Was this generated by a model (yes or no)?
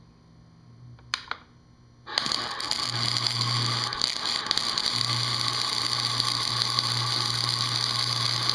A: no